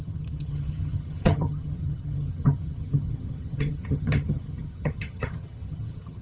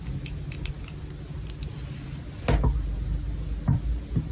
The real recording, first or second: second